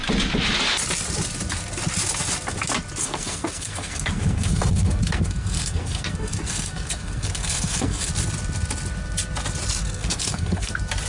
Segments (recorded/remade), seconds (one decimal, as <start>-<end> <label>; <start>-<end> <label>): 0.0-3.0 recorded; 3.0-8.1 remade; 8.1-9.8 recorded; 9.8-10.7 remade; 10.7-11.1 recorded